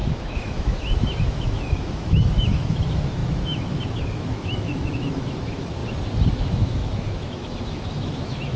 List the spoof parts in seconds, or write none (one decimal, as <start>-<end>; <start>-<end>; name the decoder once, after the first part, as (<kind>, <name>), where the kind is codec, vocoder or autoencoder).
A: 0.0-5.8 (autoencoder, DAC-VAE); 6.3-8.6